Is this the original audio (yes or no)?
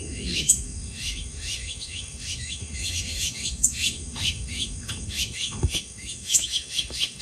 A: no